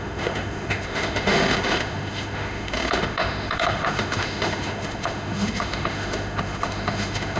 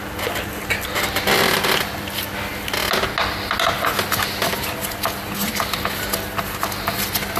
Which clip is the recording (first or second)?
second